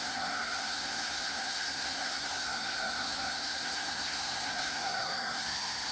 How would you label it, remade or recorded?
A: remade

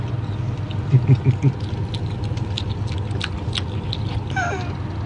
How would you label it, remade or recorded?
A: recorded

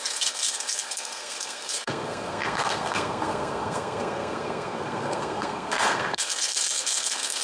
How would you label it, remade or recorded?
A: remade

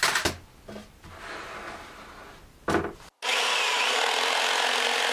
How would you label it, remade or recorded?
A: recorded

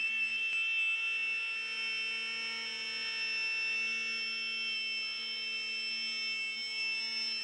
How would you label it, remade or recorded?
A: recorded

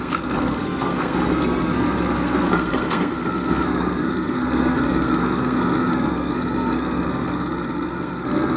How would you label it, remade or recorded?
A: remade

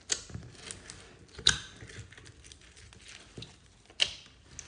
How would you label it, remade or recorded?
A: recorded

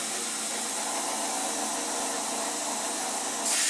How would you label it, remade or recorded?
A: recorded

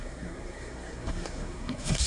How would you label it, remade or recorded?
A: remade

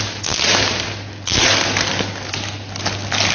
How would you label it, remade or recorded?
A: recorded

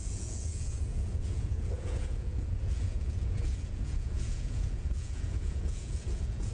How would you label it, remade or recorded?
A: remade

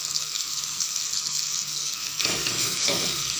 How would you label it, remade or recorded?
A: remade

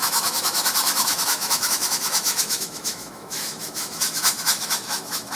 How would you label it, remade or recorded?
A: remade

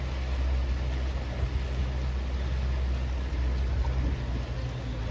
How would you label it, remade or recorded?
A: recorded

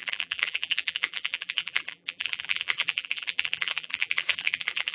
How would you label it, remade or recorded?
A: remade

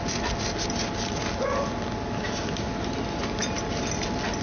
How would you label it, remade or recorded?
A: recorded